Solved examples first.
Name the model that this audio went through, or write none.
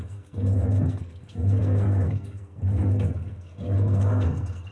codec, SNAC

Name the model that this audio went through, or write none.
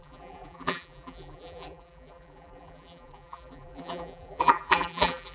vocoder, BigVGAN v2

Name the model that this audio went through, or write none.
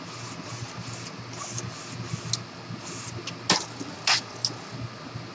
none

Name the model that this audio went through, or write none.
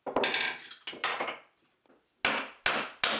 none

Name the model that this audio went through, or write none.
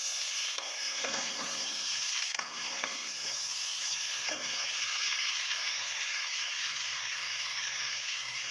codec, SNAC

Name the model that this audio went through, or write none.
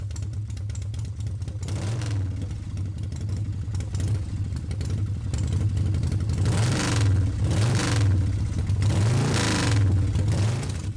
none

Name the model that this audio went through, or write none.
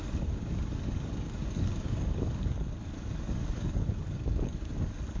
codec, DAC